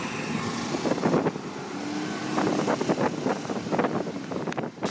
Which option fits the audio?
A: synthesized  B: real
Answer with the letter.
B